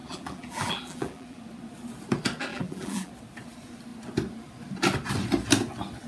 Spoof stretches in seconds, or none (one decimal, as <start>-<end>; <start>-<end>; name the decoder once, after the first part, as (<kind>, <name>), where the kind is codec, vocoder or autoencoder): 0.0-1.4 (vocoder, BigVGAN v2); 2.5-3.1